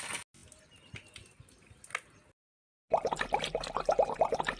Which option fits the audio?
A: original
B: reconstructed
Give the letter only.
A